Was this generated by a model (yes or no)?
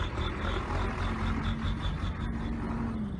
no